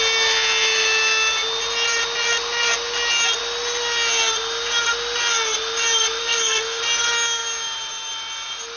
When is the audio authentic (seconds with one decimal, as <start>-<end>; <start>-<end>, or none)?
0.0-6.2; 6.8-8.8